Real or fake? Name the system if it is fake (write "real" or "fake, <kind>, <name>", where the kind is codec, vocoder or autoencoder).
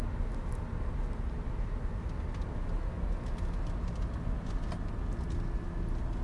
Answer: real